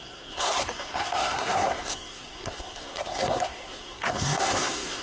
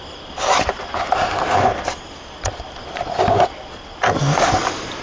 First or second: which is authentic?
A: second